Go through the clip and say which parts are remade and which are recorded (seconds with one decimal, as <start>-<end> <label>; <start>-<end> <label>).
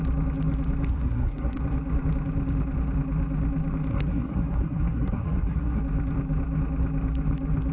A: 0.0-0.9 recorded; 0.9-1.6 remade; 1.6-3.9 recorded; 3.9-5.8 remade; 5.8-7.7 recorded